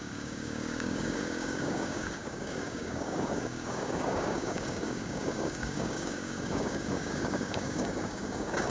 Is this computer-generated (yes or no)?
yes